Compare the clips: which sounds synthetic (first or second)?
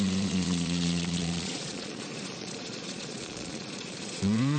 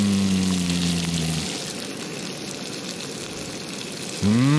first